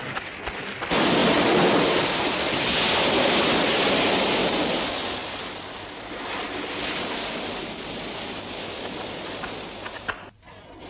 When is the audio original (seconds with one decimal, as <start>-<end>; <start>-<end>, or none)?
0.0-10.9